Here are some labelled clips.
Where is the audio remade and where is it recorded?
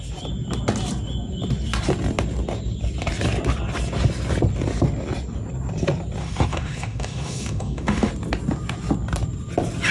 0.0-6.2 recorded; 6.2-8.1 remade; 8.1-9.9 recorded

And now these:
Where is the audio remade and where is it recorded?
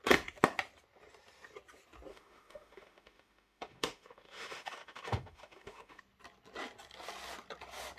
0.0-2.1 recorded; 2.1-6.0 remade; 6.0-8.0 recorded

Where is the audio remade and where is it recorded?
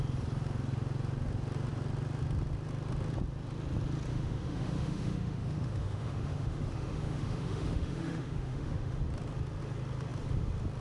0.0-4.1 recorded; 4.1-9.0 remade; 9.0-10.8 recorded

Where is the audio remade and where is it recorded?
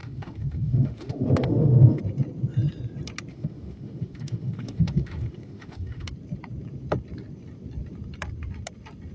0.0-2.0 remade; 2.0-3.3 recorded; 3.3-6.1 remade; 6.1-9.1 recorded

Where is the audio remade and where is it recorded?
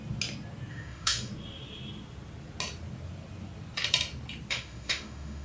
0.0-0.7 recorded; 0.7-1.3 remade; 1.3-4.5 recorded; 4.5-5.4 remade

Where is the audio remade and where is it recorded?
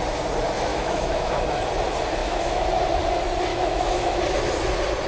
0.0-0.7 recorded; 0.7-1.4 remade; 1.4-2.2 recorded; 2.2-2.7 remade; 2.7-3.5 recorded; 3.5-4.2 remade; 4.2-5.1 recorded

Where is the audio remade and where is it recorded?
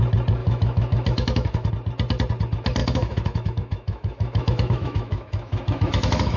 0.0-0.4 recorded; 0.4-1.7 remade; 1.7-2.8 recorded; 2.8-6.4 remade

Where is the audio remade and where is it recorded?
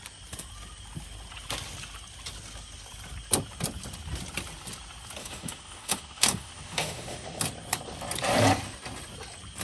0.0-5.2 recorded; 5.2-7.4 remade; 7.4-9.6 recorded